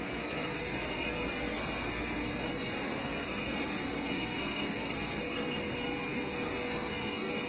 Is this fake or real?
fake